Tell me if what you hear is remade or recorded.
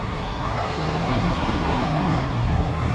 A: remade